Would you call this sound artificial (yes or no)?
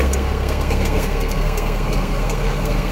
yes